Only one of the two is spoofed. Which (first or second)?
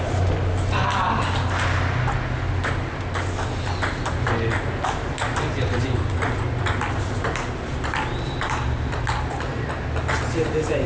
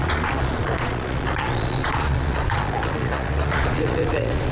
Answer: second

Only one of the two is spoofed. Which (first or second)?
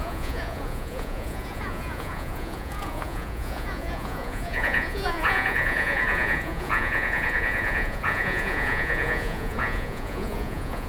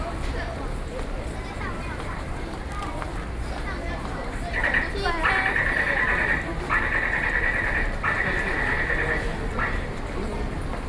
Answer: first